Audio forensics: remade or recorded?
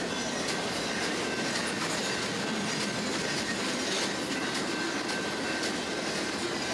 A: recorded